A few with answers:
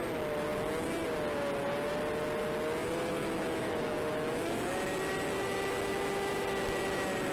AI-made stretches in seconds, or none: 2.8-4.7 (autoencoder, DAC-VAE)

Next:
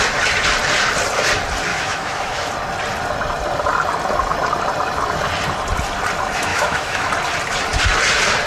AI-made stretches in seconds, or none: 1.7-2.5 (autoencoder, DAC-VAE); 6.5-7.1

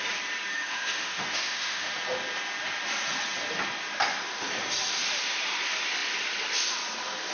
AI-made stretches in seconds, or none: 0.5-1.9 (autoencoder, DAC-VAE)